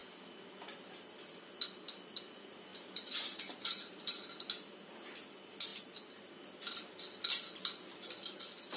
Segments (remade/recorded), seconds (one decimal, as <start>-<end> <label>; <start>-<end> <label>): 0.0-2.7 recorded; 2.7-4.3 remade; 4.3-5.7 recorded; 5.7-6.3 remade; 6.3-8.8 recorded